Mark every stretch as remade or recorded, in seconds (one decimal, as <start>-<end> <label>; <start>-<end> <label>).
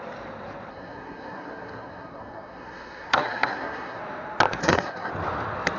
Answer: 0.0-0.7 recorded; 0.7-4.0 remade; 4.0-4.6 recorded; 4.6-5.1 remade; 5.1-5.8 recorded